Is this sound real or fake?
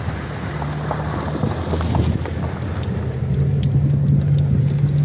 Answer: real